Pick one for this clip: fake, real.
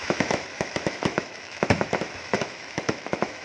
fake